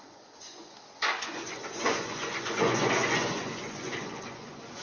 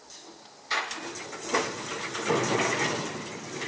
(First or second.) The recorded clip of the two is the second